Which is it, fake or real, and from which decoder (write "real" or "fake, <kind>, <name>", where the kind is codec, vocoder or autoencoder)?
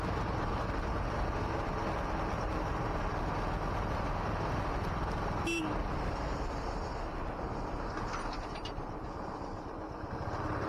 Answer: real